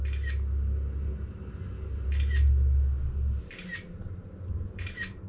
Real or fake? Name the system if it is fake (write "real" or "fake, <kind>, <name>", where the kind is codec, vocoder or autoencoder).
real